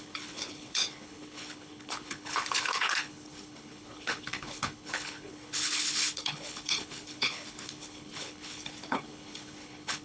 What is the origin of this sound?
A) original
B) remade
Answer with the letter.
B